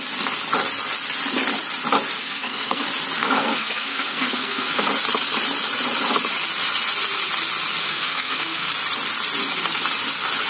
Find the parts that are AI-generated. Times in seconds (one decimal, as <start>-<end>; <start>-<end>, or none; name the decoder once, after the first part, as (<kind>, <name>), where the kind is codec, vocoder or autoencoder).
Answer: 2.2-2.8 (codec, SNAC); 3.2-4.8; 7.8-8.7